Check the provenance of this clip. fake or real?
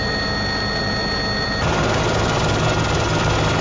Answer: real